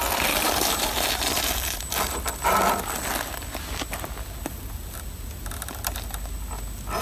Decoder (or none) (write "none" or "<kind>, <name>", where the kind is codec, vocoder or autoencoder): none